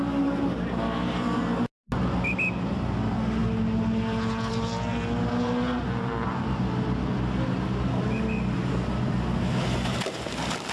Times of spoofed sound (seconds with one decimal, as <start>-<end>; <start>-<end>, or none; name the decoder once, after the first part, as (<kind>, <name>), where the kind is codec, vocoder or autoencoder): none